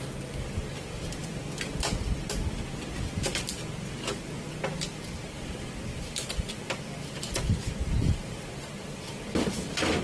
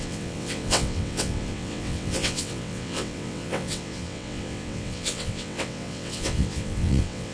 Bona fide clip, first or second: first